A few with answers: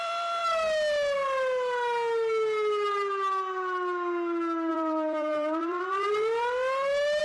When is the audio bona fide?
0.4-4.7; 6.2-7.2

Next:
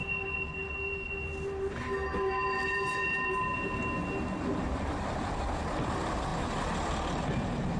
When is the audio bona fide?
0.0-7.8

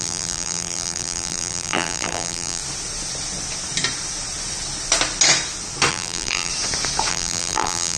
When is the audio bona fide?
2.6-5.9; 6.5-7.1

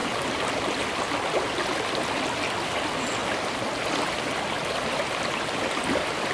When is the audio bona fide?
0.0-6.3

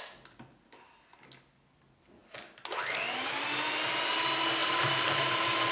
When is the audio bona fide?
0.0-4.6

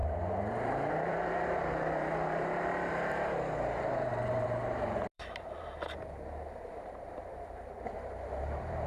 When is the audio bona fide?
none

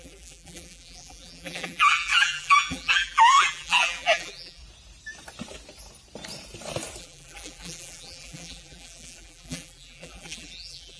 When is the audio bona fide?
4.6-7.0